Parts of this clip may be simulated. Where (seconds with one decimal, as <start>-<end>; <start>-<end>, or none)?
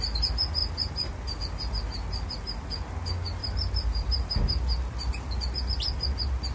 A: 3.4-5.1